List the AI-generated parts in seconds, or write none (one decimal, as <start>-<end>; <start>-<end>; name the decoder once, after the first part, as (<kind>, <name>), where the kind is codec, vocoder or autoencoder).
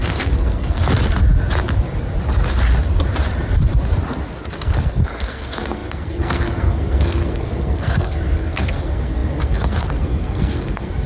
0.0-0.8 (codec, SNAC); 4.4-11.1